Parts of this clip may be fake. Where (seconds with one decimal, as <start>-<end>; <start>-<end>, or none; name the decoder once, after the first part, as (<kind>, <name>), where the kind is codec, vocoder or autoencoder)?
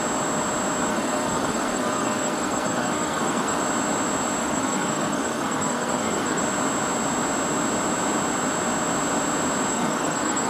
0.9-3.6 (codec, SNAC); 4.4-6.4; 9.7-10.5